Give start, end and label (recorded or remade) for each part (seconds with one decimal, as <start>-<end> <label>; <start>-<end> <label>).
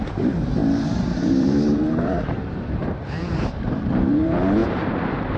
0.0-5.4 remade